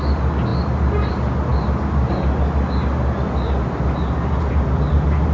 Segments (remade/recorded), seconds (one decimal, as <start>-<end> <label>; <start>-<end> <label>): 0.0-5.3 recorded